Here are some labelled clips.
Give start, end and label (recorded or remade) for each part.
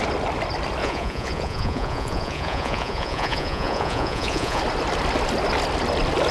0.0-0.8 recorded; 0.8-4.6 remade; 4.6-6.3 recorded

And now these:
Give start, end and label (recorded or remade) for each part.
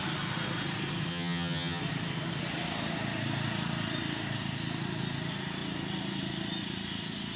0.0-1.1 recorded; 1.1-1.8 remade; 1.8-7.4 recorded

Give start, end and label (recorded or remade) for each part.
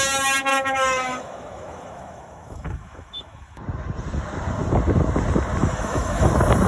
0.0-0.5 recorded; 0.5-3.6 remade; 3.6-5.6 recorded; 5.6-6.3 remade; 6.3-6.7 recorded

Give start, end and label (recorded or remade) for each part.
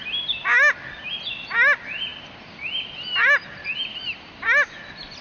0.0-5.2 recorded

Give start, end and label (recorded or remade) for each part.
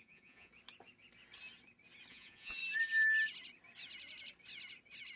0.0-0.5 remade; 0.5-2.1 recorded; 2.1-2.6 remade; 2.6-5.2 recorded